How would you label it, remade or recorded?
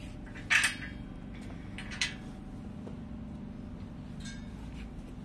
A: recorded